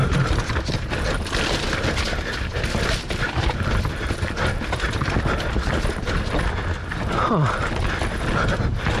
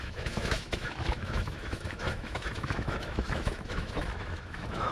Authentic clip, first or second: first